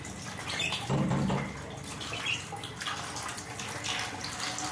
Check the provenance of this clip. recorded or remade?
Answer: recorded